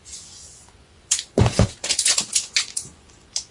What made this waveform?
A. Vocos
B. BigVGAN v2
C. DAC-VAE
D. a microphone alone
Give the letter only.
A